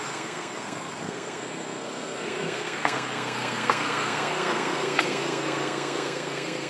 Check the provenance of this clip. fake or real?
fake